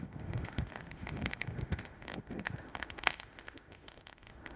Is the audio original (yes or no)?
no